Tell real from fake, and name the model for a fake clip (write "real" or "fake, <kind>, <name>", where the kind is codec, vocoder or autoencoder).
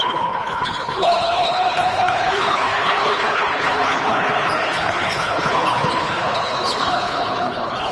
fake, codec, HILCodec